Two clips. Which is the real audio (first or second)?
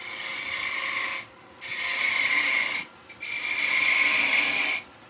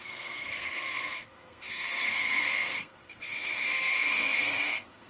first